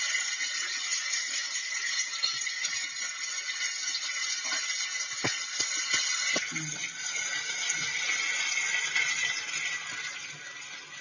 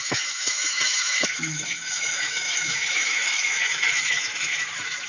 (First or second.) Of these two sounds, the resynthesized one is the second